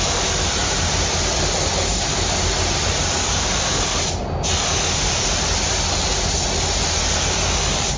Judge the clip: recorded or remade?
recorded